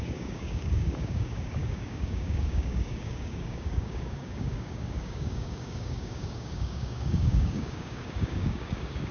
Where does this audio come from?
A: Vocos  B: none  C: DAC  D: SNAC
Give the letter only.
C